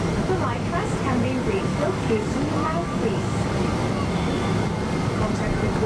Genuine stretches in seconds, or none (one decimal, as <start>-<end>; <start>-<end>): 0.0-1.7; 3.5-5.9